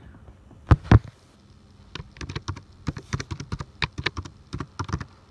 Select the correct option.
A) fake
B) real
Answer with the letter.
B